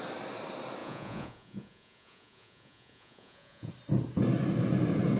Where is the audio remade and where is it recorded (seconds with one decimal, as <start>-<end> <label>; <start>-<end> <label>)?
0.0-0.8 recorded; 0.8-3.7 remade; 3.7-5.2 recorded